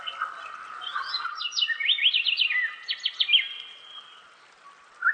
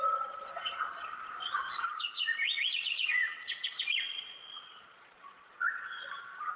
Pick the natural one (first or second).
first